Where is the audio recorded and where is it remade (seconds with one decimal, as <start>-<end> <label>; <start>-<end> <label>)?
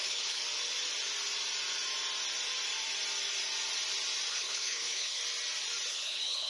0.0-0.4 remade; 0.4-4.3 recorded; 4.3-5.2 remade; 5.2-5.9 recorded; 5.9-6.5 remade